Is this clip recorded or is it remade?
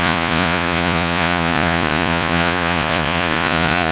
remade